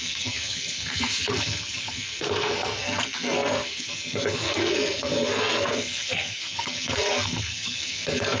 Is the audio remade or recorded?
remade